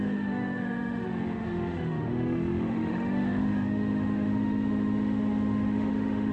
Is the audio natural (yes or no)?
no